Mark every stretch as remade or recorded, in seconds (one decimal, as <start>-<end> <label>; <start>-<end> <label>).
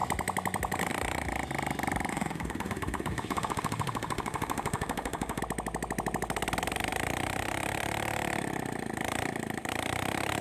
0.0-2.1 recorded; 2.1-5.4 remade; 5.4-10.4 recorded